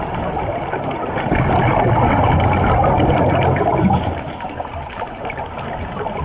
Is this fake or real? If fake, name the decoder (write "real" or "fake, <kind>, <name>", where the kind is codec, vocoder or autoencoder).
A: real